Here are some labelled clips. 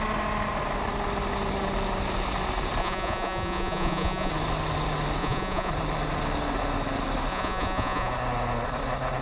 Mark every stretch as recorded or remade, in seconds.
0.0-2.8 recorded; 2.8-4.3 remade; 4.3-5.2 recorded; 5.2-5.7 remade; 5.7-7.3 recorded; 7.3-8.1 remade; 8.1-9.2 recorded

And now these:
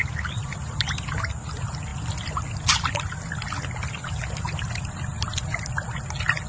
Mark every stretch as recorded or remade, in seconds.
0.0-1.5 remade; 1.5-6.5 recorded

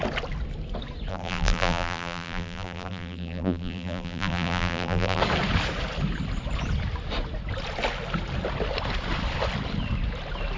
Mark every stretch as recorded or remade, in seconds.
0.0-1.1 recorded; 1.1-5.2 remade; 5.2-10.6 recorded

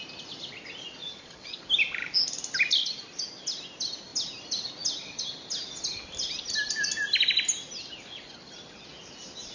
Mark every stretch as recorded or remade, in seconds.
0.0-1.0 recorded; 1.0-1.6 remade; 1.6-9.5 recorded

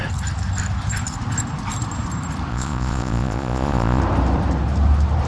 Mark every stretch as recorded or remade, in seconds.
0.0-2.5 recorded; 2.5-4.0 remade; 4.0-5.3 recorded

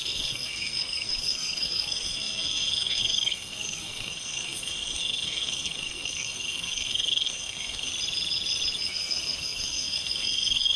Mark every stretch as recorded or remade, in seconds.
0.0-7.9 remade; 7.9-8.9 recorded; 8.9-10.8 remade

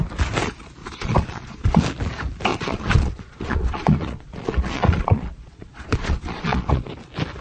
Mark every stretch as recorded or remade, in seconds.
0.0-0.8 recorded; 0.8-1.8 remade; 1.8-2.5 recorded; 2.5-6.9 remade; 6.9-7.4 recorded

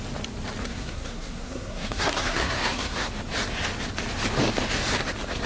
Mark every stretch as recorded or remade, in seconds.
0.0-0.6 recorded; 0.6-3.1 remade; 3.1-5.5 recorded